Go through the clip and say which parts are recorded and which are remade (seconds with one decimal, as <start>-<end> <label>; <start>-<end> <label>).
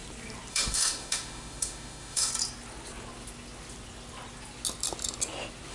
0.0-0.5 recorded; 0.5-2.3 remade; 2.3-5.7 recorded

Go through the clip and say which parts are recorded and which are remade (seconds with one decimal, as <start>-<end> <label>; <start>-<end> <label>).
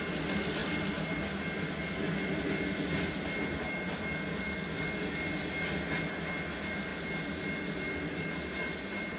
0.0-9.2 recorded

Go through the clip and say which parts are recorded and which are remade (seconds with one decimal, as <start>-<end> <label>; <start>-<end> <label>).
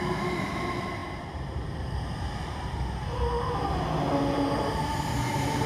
0.0-2.6 remade; 2.6-5.3 recorded; 5.3-5.7 remade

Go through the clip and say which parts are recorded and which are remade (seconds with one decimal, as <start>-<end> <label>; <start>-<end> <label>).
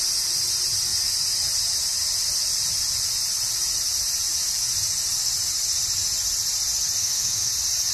0.0-7.0 recorded; 7.0-7.5 remade; 7.5-7.9 recorded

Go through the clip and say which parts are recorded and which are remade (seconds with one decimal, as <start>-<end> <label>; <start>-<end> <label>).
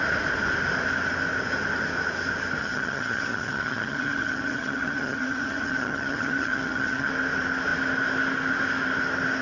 0.0-2.6 recorded; 2.6-7.1 remade; 7.1-9.4 recorded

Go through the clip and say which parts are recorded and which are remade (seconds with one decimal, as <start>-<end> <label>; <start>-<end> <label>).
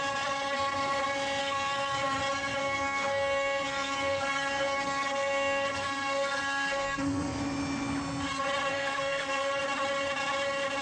0.0-1.4 recorded; 1.4-2.0 remade; 2.0-2.6 recorded; 2.6-7.4 remade; 7.4-8.7 recorded; 8.7-9.6 remade; 9.6-10.8 recorded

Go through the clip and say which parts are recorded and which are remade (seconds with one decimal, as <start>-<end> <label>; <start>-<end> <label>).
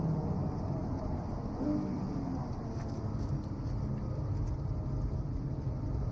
0.0-6.1 recorded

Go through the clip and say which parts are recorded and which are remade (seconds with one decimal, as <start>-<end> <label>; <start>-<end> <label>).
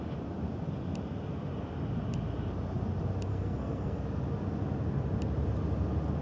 0.0-3.3 recorded; 3.3-4.0 remade; 4.0-6.2 recorded